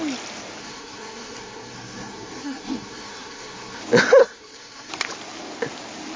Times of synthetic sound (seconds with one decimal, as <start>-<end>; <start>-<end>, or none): 0.6-3.8; 4.2-4.9